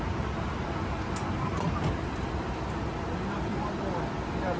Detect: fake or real real